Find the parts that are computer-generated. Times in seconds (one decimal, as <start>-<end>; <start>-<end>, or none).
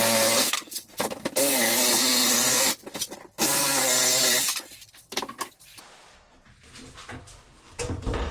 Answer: 0.4-1.0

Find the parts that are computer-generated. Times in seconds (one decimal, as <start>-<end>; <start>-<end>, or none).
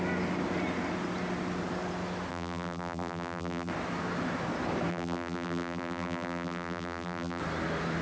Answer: 2.3-3.7; 4.9-7.4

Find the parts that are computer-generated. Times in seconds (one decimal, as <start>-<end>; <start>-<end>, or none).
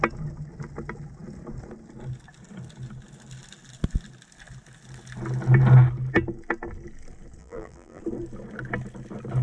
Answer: 7.4-8.0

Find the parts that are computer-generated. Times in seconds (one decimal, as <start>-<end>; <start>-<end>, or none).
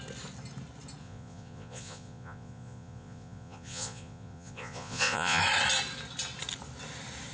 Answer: 1.0-5.4